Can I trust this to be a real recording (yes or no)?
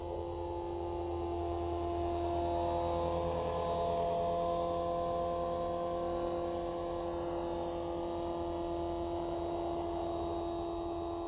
yes